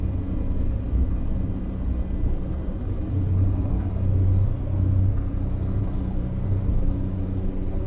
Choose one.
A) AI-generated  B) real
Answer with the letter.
B